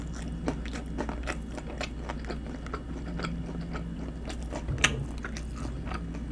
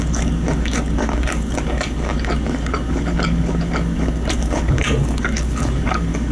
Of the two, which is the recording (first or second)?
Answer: first